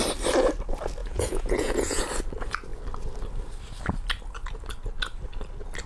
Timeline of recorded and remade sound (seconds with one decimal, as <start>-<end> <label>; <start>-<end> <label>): 0.0-1.0 recorded; 1.0-2.0 remade; 2.0-5.9 recorded